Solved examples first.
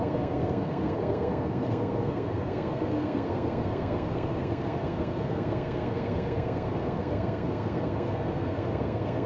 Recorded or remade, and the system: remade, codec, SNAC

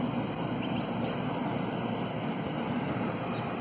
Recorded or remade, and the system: recorded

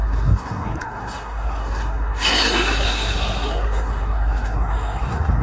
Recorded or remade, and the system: remade, codec, SNAC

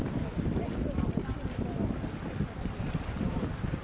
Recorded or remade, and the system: recorded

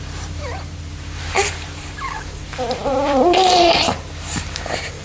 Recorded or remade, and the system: remade, vocoder, BigVGAN v2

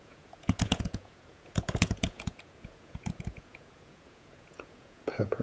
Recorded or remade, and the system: remade, vocoder, Vocos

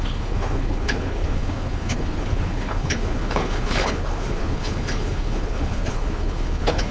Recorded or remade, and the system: remade, codec, HILCodec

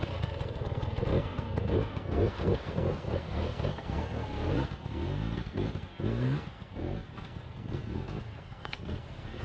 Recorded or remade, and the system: remade, codec, SNAC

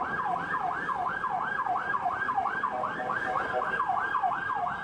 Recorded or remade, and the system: recorded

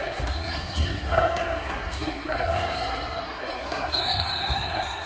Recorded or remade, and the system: remade, codec, SNAC